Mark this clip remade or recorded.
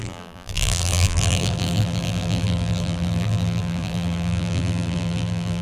remade